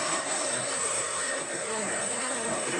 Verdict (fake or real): fake